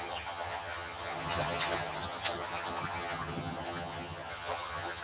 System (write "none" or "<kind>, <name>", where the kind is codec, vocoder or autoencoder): vocoder, HiFi-GAN